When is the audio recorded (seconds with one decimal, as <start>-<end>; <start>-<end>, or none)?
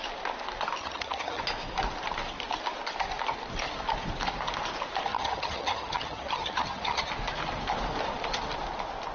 0.0-0.8; 1.4-5.1; 7.1-9.1